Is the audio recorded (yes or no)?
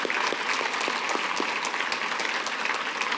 yes